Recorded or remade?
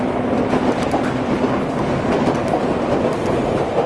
remade